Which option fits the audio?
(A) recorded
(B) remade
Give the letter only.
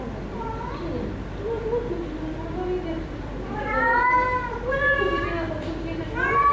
A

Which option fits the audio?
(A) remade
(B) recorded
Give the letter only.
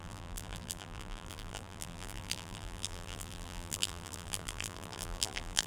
A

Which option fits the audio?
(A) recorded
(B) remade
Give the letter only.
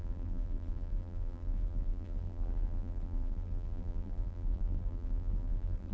B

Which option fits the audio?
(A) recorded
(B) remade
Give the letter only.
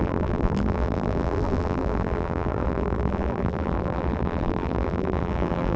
B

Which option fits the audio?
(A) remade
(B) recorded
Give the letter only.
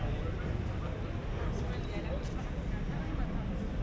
B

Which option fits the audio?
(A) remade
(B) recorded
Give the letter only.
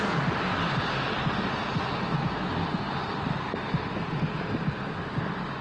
B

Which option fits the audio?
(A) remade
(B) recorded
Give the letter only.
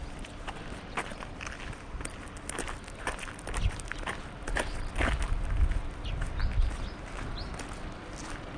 B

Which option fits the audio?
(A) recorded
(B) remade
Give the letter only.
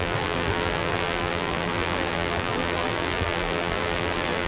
B